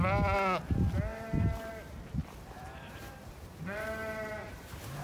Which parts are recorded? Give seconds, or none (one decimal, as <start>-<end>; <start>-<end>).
0.0-1.1; 1.7-2.2